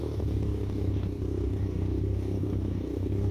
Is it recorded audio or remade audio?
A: remade